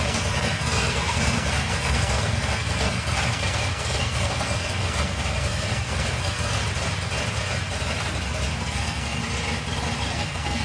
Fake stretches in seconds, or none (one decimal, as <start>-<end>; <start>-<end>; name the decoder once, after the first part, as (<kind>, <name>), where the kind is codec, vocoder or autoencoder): 0.0-6.6 (codec, SNAC); 8.6-9.2; 10.1-10.6